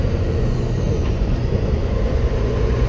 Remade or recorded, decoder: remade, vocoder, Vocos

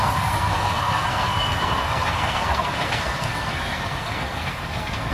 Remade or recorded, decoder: remade, codec, SNAC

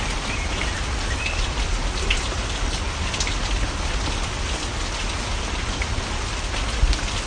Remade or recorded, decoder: recorded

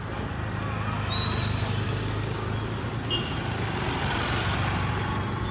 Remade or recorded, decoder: recorded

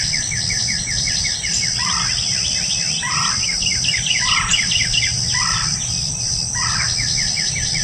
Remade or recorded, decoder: recorded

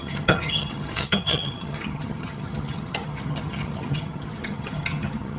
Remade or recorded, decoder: remade, vocoder, HiFi-GAN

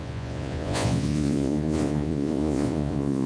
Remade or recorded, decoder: remade, vocoder, Vocos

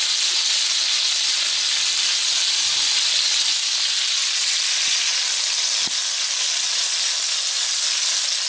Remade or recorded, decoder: recorded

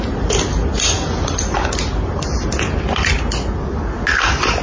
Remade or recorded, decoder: recorded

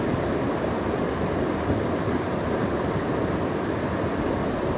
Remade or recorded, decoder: recorded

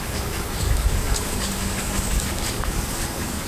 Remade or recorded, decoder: remade, codec, DAC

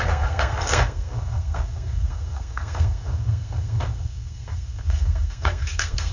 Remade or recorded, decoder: remade, codec, SNAC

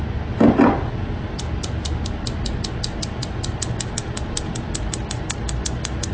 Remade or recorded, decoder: recorded